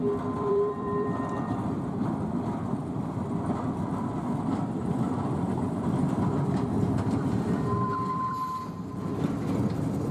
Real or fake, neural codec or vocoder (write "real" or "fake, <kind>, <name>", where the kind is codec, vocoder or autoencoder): fake, vocoder, BigVGAN v2